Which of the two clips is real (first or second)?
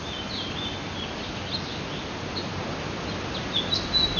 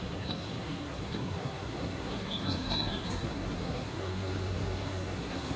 first